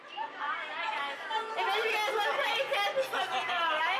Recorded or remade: recorded